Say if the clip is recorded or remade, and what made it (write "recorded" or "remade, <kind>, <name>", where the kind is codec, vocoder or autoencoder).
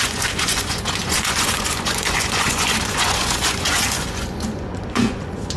remade, vocoder, Vocos